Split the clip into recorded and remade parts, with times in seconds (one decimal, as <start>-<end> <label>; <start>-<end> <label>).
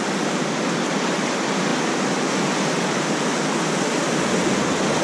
0.0-5.0 recorded